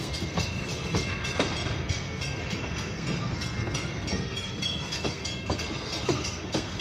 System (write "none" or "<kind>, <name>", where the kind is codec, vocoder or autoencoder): codec, SNAC